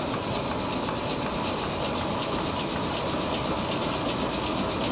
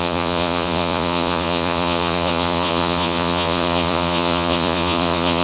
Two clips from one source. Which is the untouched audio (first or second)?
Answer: first